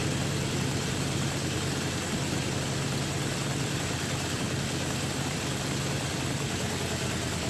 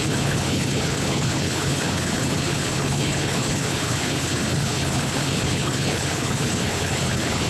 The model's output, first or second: second